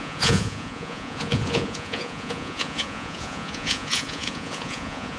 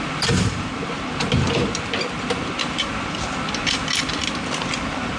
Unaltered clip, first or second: second